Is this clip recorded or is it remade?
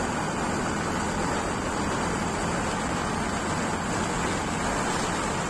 recorded